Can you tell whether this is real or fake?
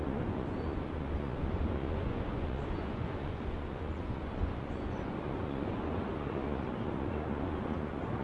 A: fake